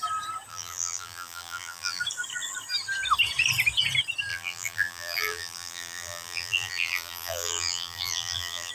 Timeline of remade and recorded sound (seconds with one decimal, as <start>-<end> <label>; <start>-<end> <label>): 0.0-0.5 recorded; 0.5-2.0 remade; 2.0-4.3 recorded; 4.3-8.7 remade